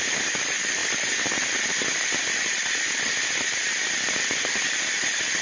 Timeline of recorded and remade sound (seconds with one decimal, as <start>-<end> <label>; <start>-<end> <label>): 0.0-5.4 recorded